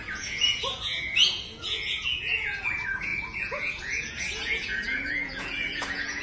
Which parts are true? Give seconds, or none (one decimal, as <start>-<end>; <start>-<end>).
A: none